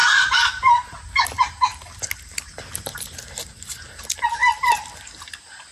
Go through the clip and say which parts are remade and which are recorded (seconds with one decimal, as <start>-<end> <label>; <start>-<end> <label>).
0.0-1.1 remade; 1.1-4.4 recorded; 4.4-5.3 remade; 5.3-5.7 recorded